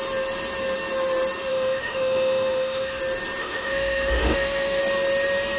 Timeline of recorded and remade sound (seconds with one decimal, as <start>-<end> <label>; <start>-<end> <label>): 0.0-1.5 recorded; 1.5-3.0 remade; 3.0-3.4 recorded; 3.4-4.8 remade; 4.8-5.6 recorded